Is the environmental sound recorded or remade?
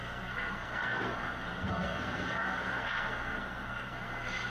remade